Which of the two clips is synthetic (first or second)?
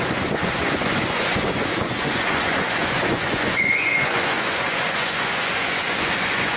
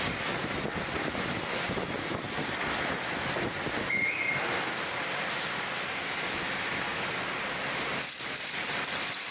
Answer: first